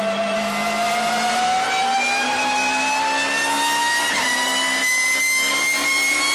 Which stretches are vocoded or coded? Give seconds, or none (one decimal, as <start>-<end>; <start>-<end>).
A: 0.0-0.6; 1.3-1.8; 5.6-6.3